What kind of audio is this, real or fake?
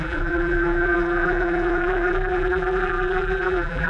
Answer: fake